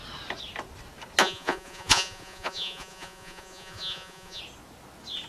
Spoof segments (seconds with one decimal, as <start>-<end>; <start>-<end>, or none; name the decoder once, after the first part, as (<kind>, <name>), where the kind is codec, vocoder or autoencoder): 1.2-4.4 (vocoder, Vocos)